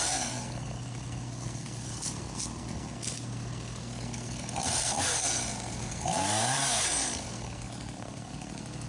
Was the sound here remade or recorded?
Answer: remade